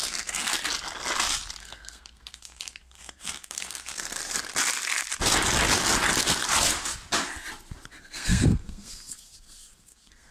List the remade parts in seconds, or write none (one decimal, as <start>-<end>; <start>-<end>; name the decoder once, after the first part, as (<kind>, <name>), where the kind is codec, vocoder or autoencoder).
0.0-0.5 (codec, SNAC); 1.6-4.2; 8.0-10.3